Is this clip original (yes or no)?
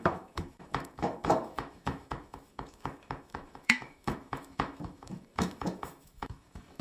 no